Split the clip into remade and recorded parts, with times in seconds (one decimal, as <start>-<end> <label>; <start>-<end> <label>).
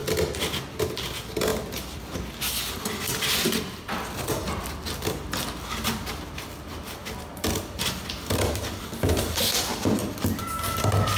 0.0-11.2 recorded